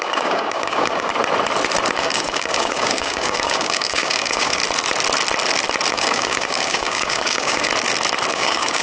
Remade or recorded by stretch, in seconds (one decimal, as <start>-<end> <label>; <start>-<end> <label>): 0.0-1.1 remade; 1.1-2.0 recorded; 2.0-4.6 remade; 4.6-5.9 recorded; 5.9-7.7 remade; 7.7-8.3 recorded; 8.3-8.8 remade